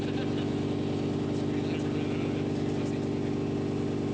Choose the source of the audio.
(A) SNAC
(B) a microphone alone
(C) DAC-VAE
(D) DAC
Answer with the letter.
B